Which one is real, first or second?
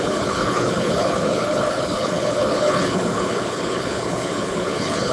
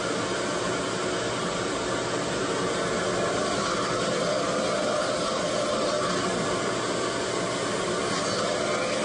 second